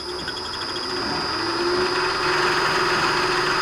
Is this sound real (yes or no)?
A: yes